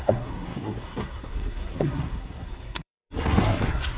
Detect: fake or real fake